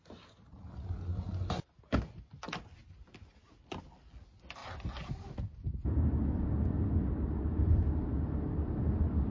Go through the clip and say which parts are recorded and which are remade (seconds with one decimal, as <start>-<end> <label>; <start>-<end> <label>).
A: 0.0-9.3 recorded